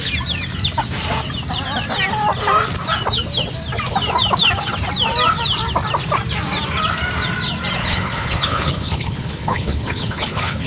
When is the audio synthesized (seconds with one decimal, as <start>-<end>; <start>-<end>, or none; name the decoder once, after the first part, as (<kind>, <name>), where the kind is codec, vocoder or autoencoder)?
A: 7.8-10.7 (codec, HILCodec)